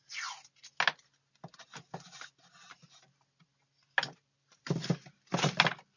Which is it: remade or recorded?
recorded